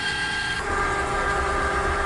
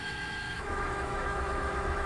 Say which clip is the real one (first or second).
first